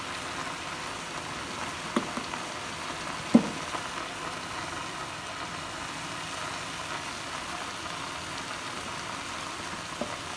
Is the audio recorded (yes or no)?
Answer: yes